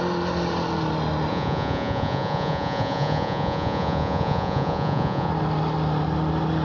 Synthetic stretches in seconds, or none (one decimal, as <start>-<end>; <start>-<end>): 1.3-5.3